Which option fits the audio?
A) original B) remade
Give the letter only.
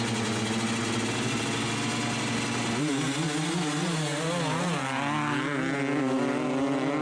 A